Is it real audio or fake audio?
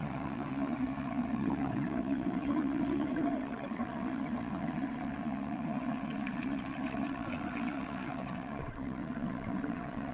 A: fake